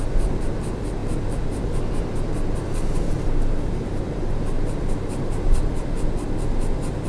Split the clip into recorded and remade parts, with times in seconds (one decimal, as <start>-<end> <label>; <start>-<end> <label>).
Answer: 0.0-7.1 recorded